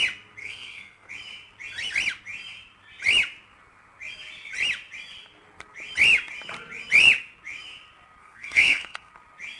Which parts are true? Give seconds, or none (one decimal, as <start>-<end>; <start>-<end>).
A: 0.0-0.4; 1.1-8.2; 9.1-9.6